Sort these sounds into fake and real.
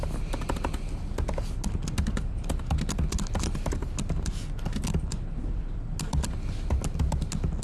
real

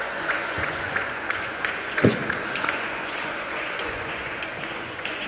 fake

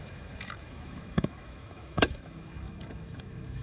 fake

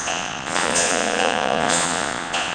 fake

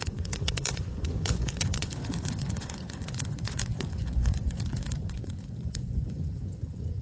fake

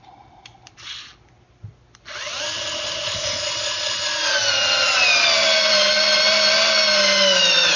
real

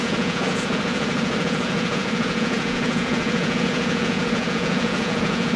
fake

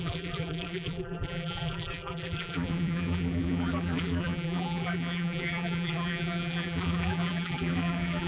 fake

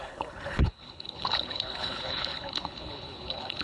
fake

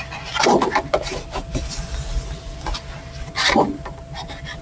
real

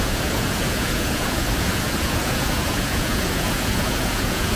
fake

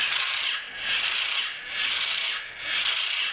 real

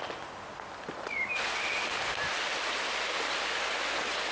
real